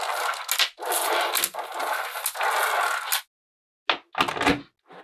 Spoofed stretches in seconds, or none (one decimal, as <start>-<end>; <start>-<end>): none